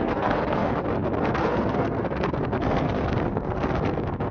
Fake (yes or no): yes